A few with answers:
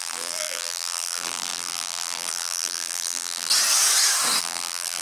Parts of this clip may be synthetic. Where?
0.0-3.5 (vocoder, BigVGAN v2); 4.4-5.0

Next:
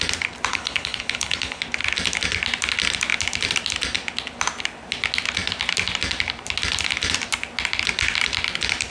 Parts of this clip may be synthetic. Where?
0.5-1.6 (codec, HILCodec)

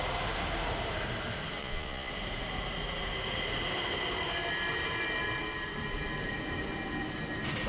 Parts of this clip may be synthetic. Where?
1.6-2.1 (vocoder, Vocos)

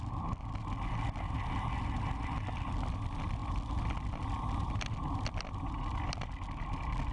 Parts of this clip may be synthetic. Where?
none

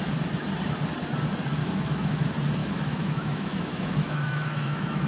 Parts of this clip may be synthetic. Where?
1.6-2.2 (autoencoder, DAC-VAE); 2.6-5.1

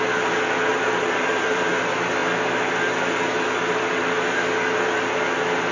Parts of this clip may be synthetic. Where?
0.7-1.7 (vocoder, BigVGAN v2)

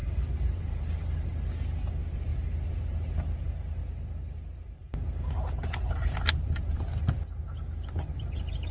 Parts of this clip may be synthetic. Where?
0.0-0.9 (vocoder, BigVGAN v2); 3.8-4.3